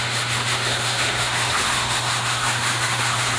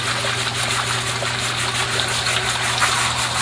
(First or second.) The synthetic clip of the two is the first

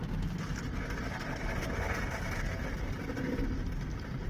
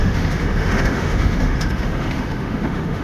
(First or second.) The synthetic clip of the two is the second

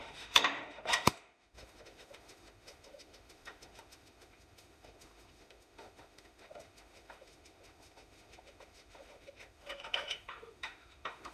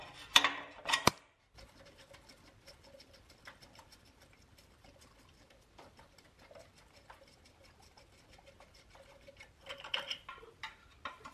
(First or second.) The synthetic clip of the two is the first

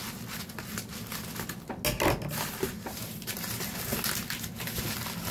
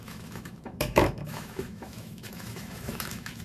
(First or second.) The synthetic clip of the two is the second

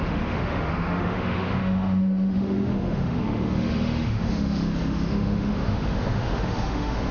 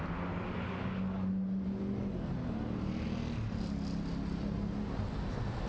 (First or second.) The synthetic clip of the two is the first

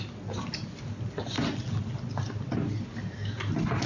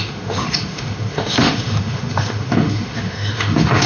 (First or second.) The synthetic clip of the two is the second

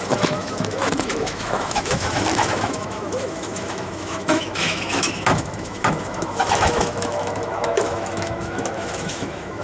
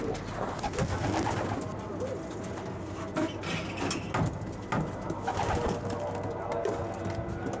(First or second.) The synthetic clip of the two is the first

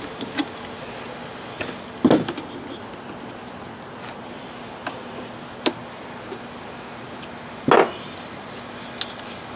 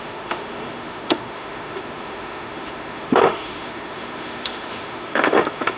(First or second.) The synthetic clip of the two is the second